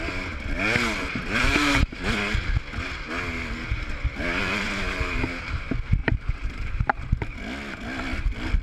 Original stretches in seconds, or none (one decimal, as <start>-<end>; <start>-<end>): 0.0-1.0; 1.9-4.4; 5.2-6.0; 6.8-8.6